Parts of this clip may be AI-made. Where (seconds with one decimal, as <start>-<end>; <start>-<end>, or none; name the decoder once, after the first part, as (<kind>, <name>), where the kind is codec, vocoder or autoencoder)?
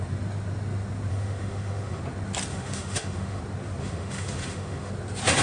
1.1-2.0 (autoencoder, DAC-VAE); 2.5-3.4; 3.8-4.9